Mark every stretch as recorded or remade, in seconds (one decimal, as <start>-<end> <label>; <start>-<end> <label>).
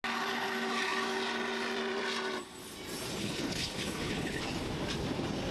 0.0-3.2 recorded; 3.2-4.4 remade; 4.4-5.5 recorded